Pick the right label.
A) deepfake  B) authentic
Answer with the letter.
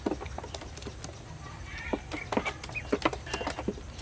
B